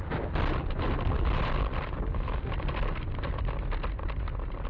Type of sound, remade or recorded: recorded